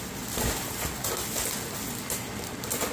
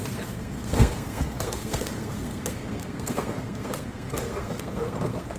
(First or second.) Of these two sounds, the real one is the first